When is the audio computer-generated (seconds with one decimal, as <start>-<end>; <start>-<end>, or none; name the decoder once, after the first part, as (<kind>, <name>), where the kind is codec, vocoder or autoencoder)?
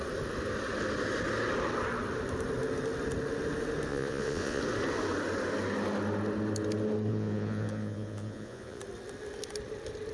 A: 3.9-4.6 (vocoder, Vocos); 7.1-8.8